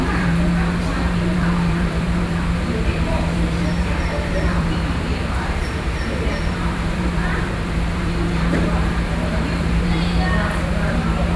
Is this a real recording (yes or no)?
no